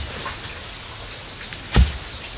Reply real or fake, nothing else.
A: real